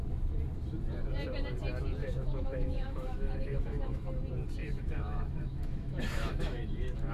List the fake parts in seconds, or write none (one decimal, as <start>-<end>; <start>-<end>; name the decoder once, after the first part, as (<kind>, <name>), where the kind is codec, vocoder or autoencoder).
2.0-4.1 (autoencoder, DAC-VAE); 4.6-7.1